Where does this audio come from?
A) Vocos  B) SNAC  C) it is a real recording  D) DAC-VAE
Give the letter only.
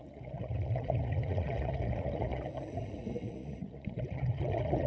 A